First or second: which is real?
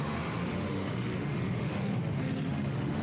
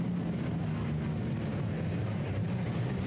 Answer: second